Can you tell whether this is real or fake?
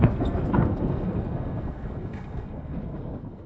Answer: fake